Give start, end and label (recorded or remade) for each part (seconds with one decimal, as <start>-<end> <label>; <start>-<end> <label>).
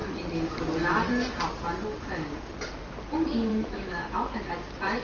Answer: 0.0-3.5 recorded; 3.5-4.5 remade; 4.5-5.0 recorded